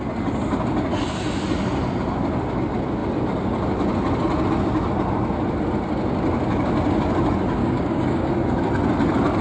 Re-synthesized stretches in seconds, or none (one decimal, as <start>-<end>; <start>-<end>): 7.6-8.3